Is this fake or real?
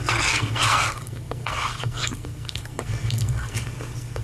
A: fake